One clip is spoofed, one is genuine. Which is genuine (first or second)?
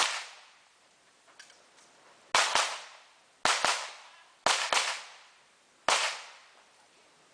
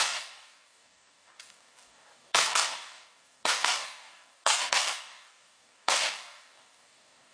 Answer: first